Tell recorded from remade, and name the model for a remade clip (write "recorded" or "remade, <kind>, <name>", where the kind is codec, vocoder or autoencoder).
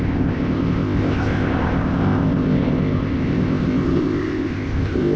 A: remade, codec, ZipCodec